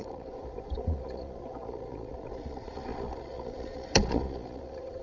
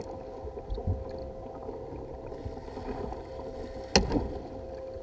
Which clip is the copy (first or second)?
first